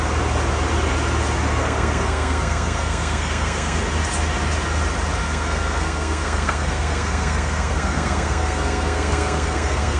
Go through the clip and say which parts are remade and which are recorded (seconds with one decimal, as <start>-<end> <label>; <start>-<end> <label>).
0.0-1.5 recorded; 1.5-3.8 remade; 3.8-5.2 recorded; 5.2-10.0 remade